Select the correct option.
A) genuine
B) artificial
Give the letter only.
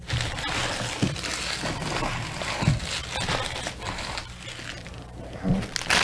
A